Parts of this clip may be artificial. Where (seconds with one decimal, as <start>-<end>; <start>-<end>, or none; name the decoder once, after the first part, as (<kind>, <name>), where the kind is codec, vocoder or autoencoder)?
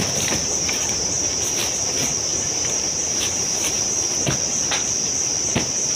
0.4-1.1 (vocoder, BigVGAN v2); 2.3-3.8